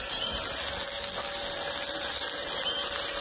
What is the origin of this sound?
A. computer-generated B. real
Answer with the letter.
B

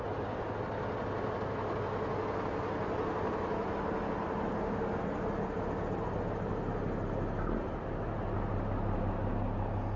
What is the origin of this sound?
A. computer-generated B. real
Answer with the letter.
B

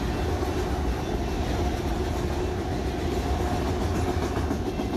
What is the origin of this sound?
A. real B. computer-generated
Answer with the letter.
A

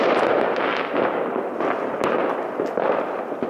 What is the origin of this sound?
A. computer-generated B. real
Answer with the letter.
B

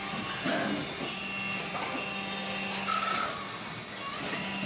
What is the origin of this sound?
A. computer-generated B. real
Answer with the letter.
B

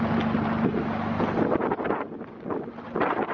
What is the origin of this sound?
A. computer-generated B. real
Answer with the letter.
B